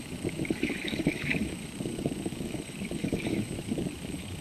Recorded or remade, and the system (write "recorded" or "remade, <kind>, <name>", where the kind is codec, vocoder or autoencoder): remade, autoencoder, DAC-VAE